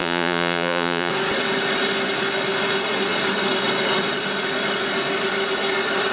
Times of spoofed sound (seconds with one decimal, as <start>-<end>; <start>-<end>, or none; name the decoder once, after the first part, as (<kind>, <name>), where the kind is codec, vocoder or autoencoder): 0.0-1.1 (vocoder, Vocos)